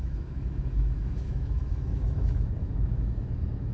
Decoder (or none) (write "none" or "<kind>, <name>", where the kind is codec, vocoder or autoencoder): autoencoder, DAC-VAE